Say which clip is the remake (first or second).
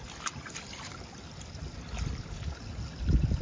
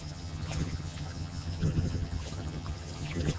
second